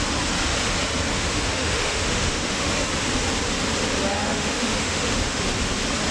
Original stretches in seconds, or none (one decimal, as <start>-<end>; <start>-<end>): 0.0-1.1; 2.7-4.1; 5.4-6.1